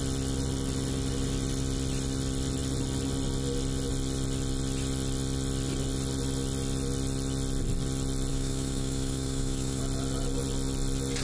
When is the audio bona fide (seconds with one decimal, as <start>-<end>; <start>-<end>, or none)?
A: 0.0-8.3; 9.8-11.2